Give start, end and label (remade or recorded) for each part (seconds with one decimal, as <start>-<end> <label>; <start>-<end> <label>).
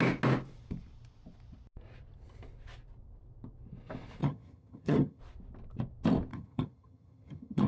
0.0-4.2 recorded; 4.2-5.2 remade; 5.2-6.3 recorded; 6.3-7.7 remade